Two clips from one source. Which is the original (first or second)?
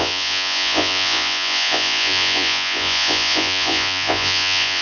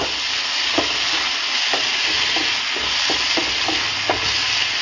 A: second